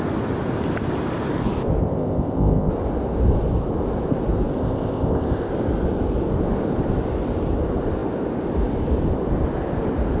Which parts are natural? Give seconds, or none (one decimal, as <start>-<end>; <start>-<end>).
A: 0.0-1.8; 2.7-4.6; 5.5-10.2